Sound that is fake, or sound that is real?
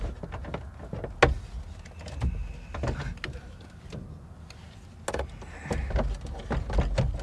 real